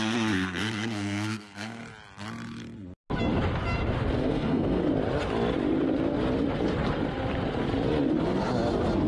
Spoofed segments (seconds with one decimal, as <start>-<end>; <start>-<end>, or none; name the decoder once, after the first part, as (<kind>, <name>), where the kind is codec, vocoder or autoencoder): 0.0-1.8 (codec, SNAC); 4.2-4.8